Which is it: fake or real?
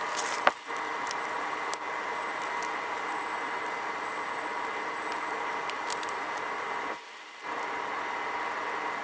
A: real